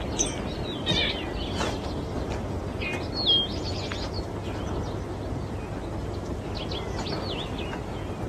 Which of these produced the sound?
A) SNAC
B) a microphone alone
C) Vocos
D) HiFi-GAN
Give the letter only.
B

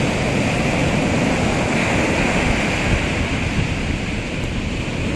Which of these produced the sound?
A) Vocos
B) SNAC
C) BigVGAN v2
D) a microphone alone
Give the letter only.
D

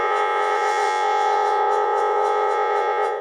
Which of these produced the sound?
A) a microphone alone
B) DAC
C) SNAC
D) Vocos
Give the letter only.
D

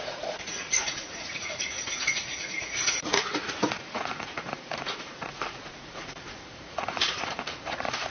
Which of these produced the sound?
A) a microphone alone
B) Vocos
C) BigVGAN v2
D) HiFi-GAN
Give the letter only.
B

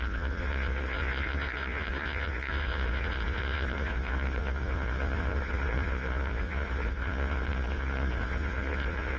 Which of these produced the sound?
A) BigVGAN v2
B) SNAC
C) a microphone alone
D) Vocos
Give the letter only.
D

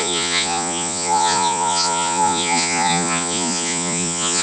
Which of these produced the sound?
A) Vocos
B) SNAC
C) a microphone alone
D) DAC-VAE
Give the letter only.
A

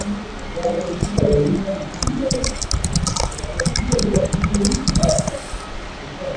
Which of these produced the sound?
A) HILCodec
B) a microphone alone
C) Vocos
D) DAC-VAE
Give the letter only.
B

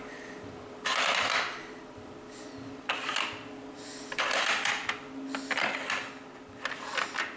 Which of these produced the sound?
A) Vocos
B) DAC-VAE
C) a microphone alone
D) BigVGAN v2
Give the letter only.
C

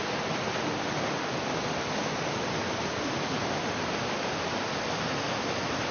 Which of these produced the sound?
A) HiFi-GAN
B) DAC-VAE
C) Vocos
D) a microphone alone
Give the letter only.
D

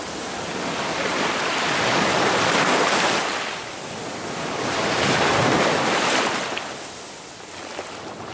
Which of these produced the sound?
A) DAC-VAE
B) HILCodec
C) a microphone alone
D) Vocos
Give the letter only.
C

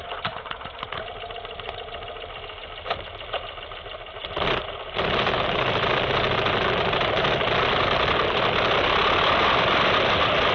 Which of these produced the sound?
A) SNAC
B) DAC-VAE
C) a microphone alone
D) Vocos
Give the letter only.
C